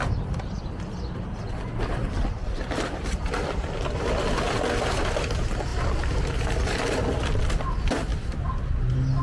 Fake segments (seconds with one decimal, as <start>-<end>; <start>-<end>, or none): 2.4-4.1; 5.7-6.2; 8.1-9.2